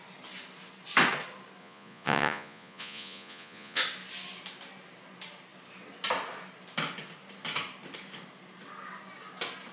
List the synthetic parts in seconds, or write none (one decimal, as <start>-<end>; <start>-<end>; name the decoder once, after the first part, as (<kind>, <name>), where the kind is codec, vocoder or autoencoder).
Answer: 1.6-3.8 (vocoder, Vocos)